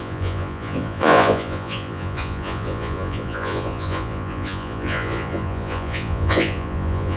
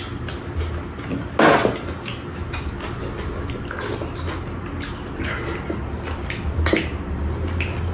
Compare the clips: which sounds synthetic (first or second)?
first